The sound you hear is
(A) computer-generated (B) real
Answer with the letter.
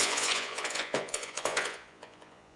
A